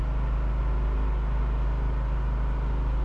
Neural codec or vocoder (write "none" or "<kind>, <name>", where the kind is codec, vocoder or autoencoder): none